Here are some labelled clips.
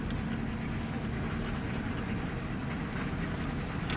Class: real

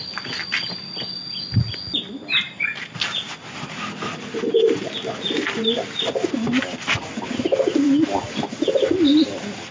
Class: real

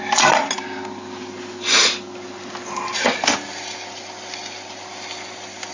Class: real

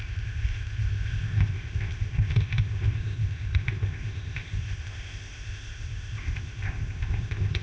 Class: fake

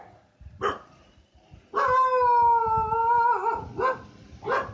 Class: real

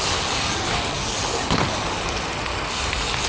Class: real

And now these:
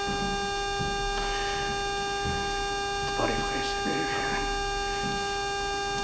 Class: real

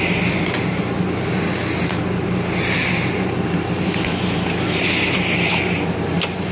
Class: real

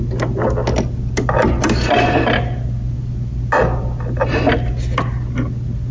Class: real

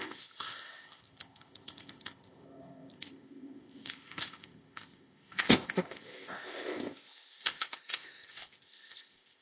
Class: fake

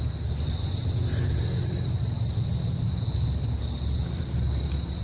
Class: real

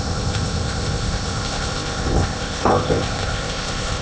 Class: fake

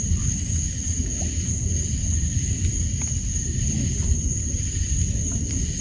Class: real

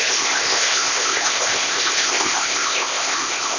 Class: fake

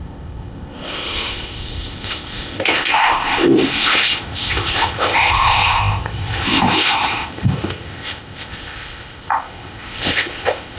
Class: fake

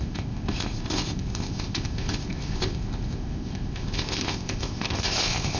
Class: fake